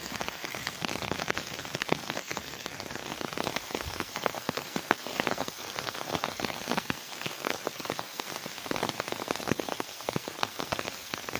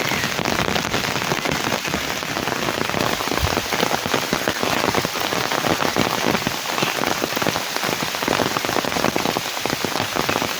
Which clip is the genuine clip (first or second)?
second